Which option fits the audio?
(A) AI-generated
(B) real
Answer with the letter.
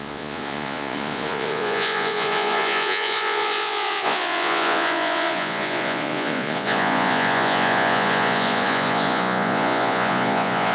A